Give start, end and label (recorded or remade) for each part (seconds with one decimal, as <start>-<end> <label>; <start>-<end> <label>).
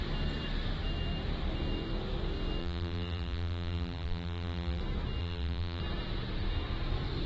0.0-2.6 recorded; 2.6-4.8 remade; 4.8-5.2 recorded; 5.2-5.8 remade; 5.8-7.3 recorded